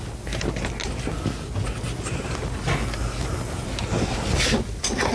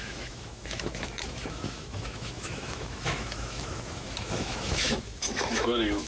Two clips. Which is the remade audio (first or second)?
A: second